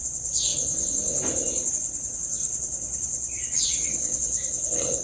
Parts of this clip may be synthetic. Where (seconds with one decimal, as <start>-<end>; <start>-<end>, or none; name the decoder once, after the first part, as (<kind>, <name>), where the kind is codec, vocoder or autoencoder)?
0.0-0.5 (vocoder, WaveNeXt); 1.7-5.0